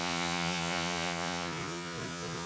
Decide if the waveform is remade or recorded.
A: remade